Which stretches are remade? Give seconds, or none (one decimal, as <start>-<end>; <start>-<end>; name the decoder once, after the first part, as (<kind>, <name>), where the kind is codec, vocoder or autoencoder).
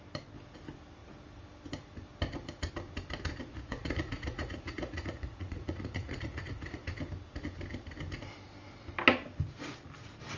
3.5-6.8 (vocoder, Vocos)